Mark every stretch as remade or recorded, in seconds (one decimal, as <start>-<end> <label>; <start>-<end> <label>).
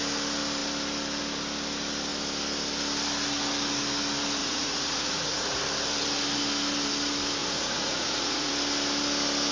0.0-4.4 recorded; 4.4-5.6 remade; 5.6-7.4 recorded; 7.4-8.5 remade; 8.5-9.5 recorded